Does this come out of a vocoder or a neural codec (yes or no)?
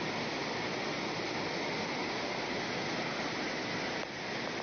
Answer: no